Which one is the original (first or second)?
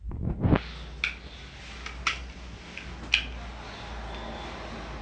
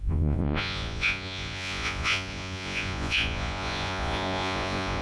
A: first